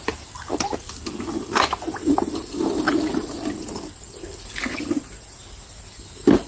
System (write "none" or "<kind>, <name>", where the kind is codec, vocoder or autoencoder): none